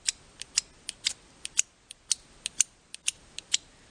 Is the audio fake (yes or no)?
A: no